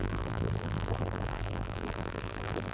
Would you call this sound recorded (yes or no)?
no